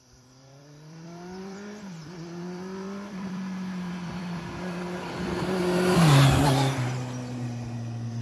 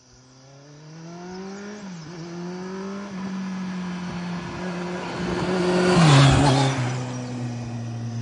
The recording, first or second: second